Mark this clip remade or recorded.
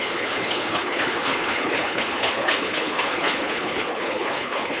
remade